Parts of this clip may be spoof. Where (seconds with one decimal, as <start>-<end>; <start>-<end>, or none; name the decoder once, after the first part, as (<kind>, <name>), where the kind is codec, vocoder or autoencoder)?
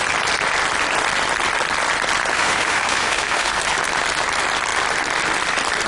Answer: 2.3-3.6 (autoencoder, DAC-VAE)